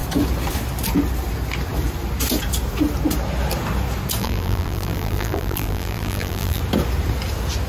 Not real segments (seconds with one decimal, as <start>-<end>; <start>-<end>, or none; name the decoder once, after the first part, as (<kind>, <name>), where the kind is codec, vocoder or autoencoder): 4.2-6.6 (vocoder, BigVGAN v2)